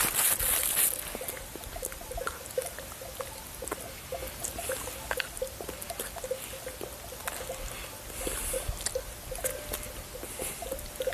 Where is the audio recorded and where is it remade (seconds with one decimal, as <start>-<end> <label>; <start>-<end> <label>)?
0.0-11.1 recorded